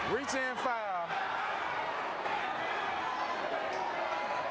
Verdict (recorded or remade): recorded